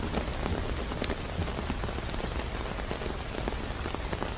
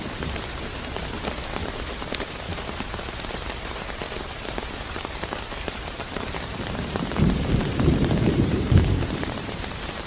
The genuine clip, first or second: first